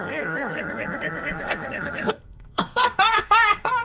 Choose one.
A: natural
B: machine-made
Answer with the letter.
B